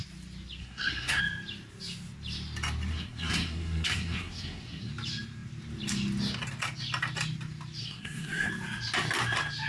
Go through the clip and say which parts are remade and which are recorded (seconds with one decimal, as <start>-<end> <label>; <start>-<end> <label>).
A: 0.0-0.6 recorded; 0.6-1.2 remade; 1.2-2.9 recorded; 2.9-4.9 remade; 4.9-7.8 recorded; 7.8-8.5 remade; 8.5-9.7 recorded